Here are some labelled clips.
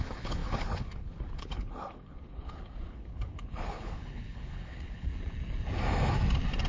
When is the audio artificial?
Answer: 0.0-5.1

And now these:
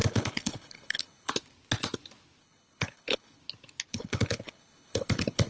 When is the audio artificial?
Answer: 0.0-1.3; 2.4-3.4; 3.9-5.5

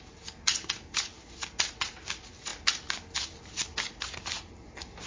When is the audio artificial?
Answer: none